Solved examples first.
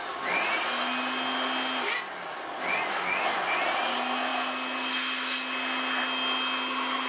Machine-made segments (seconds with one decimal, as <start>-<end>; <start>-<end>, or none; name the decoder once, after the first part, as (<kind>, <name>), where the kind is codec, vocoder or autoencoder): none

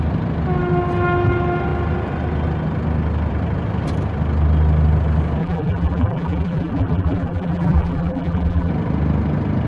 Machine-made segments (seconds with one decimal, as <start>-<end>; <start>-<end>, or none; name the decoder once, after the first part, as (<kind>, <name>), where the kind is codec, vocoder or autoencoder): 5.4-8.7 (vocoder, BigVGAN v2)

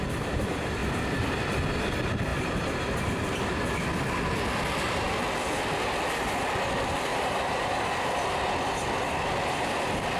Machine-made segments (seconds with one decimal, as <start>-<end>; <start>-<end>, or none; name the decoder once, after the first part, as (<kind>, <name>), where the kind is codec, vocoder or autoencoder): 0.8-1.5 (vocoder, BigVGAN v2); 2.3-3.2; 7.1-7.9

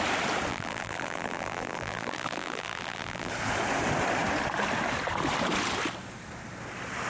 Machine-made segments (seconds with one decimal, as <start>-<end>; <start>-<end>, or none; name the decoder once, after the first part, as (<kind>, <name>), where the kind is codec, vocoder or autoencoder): 0.5-3.3 (vocoder, BigVGAN v2)

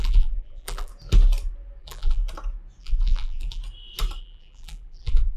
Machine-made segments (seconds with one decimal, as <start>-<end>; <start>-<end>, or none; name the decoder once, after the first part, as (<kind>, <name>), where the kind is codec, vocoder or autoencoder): 0.0-0.9 (vocoder, BigVGAN v2); 1.8-2.2; 2.8-3.6; 4.2-5.4

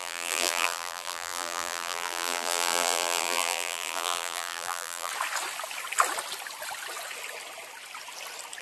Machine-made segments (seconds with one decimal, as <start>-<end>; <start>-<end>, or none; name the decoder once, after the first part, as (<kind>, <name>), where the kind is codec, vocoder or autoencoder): 0.0-5.1 (vocoder, BigVGAN v2)

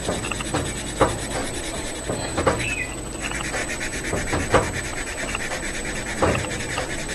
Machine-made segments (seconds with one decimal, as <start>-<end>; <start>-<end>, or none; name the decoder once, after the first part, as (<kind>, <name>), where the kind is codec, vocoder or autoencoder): 1.4-2.4 (vocoder, BigVGAN v2); 3.6-7.1

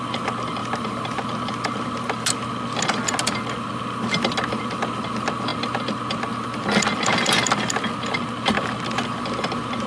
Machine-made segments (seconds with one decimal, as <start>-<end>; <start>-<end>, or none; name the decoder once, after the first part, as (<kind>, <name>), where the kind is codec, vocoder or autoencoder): 0.6-1.2 (vocoder, BigVGAN v2)